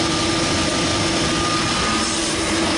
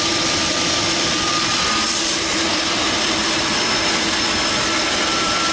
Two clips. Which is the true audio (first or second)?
first